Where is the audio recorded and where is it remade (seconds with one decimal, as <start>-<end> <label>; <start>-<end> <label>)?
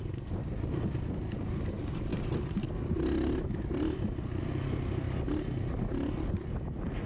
0.0-7.1 recorded